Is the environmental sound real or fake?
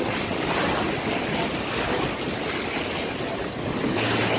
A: real